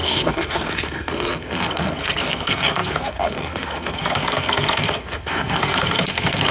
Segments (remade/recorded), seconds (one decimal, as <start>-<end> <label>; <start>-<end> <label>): 0.0-6.5 remade

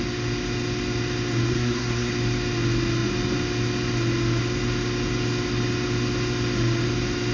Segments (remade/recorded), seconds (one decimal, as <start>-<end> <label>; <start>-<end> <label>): 0.0-1.5 recorded; 1.5-2.1 remade; 2.1-7.3 recorded

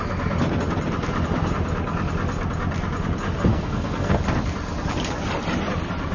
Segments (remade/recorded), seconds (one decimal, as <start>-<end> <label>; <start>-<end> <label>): 0.0-3.5 recorded; 3.5-4.2 remade; 4.2-6.1 recorded

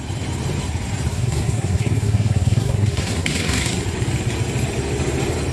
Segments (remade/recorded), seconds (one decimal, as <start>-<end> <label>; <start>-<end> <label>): 0.0-1.1 recorded; 1.1-3.7 remade; 3.7-5.5 recorded